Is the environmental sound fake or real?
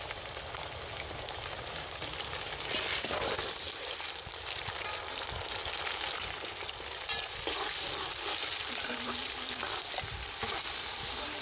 fake